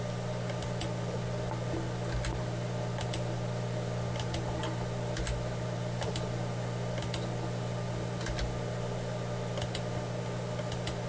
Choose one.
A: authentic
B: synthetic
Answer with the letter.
A